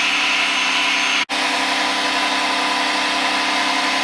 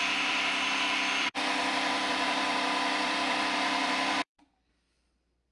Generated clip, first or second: second